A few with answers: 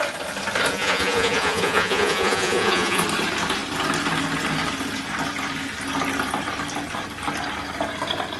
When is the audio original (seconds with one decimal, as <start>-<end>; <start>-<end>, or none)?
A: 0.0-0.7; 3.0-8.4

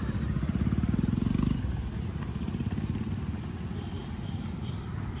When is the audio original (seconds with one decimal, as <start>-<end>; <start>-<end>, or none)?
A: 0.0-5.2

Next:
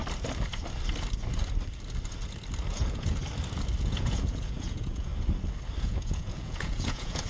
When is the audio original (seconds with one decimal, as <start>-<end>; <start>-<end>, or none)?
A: 0.0-2.7; 3.2-3.8; 5.1-5.8

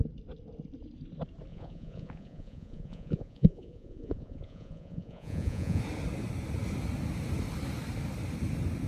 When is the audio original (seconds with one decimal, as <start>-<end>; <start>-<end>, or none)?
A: 0.0-1.5; 5.8-8.9

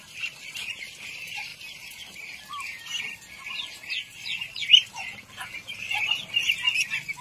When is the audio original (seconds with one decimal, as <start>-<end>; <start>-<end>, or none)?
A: 0.0-7.2

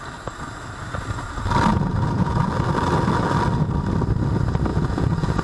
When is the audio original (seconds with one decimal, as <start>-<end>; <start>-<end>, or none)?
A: 0.0-1.7; 2.4-4.7

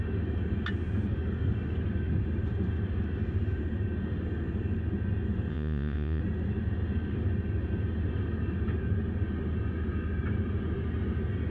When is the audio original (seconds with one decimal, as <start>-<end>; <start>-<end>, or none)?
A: 0.0-5.5; 6.2-11.5

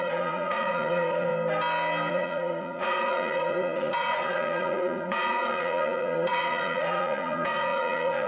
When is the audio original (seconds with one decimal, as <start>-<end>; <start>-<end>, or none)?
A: 1.3-2.1